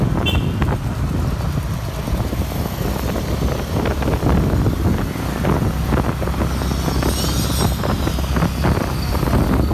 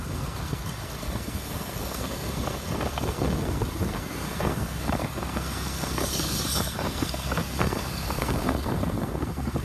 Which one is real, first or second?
first